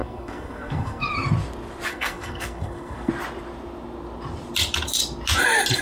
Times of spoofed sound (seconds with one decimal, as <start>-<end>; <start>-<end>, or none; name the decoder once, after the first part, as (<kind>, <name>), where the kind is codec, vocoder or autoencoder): 0.0-1.1 (codec, SNAC); 1.9-3.1